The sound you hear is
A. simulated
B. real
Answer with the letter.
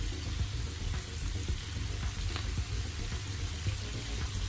B